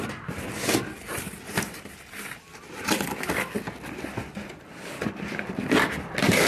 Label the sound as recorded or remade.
recorded